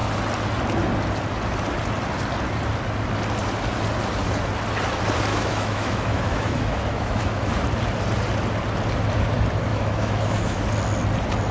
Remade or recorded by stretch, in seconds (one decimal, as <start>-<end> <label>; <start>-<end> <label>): 0.0-5.3 recorded; 5.3-7.5 remade; 7.5-9.7 recorded; 9.7-10.6 remade; 10.6-11.5 recorded